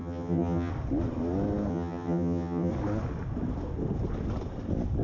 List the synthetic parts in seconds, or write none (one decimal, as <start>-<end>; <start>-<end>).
0.0-0.7; 1.7-2.7